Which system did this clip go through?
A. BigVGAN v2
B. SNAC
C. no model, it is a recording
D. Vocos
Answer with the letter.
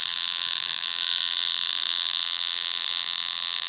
A